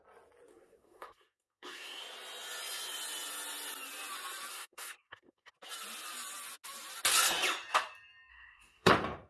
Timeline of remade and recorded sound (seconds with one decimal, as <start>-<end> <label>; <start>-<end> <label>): 0.0-0.5 recorded; 0.5-2.0 remade; 2.0-4.5 recorded; 4.5-5.5 remade; 5.5-8.3 recorded; 8.3-8.9 remade; 8.9-9.3 recorded